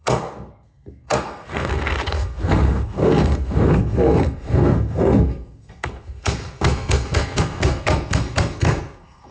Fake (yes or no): yes